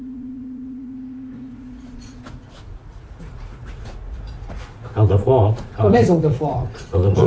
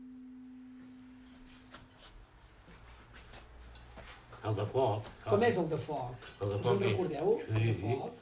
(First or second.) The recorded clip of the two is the second